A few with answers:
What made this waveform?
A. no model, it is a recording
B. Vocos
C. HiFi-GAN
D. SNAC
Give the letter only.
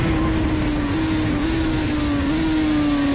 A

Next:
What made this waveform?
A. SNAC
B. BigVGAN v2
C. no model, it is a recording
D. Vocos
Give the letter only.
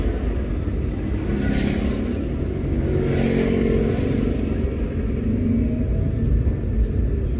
C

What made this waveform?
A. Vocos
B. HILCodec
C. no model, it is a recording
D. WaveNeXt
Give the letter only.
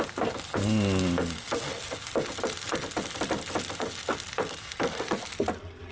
C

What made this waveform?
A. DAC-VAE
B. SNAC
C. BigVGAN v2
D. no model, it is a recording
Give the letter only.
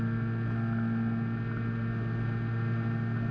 D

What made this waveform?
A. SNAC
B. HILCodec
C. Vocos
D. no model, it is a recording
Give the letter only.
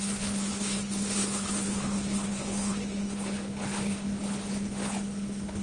B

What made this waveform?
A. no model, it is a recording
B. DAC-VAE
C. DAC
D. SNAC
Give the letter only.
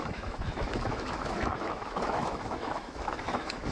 B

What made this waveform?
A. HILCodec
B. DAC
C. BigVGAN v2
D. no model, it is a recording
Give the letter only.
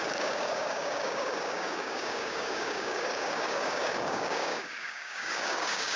B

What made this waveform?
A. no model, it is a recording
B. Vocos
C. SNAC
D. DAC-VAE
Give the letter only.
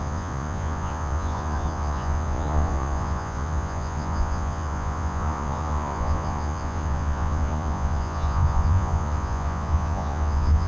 B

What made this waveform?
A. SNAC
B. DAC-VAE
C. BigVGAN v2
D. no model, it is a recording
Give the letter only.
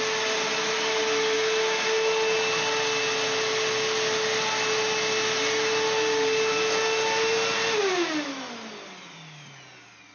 D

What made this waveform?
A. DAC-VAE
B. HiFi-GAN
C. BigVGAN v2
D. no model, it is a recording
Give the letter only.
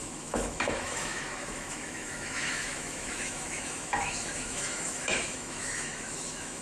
A